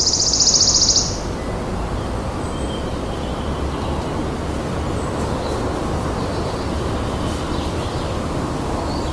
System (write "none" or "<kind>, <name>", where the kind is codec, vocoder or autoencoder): none